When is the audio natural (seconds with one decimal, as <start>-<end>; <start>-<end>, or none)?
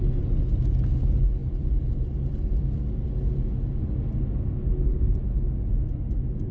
0.0-1.4; 3.1-4.9; 5.4-6.5